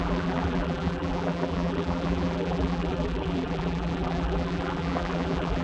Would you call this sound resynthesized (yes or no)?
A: yes